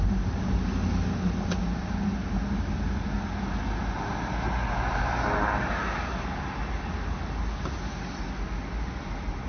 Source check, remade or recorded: recorded